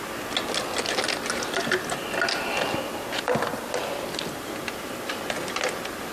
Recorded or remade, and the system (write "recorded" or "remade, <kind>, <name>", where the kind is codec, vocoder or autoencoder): recorded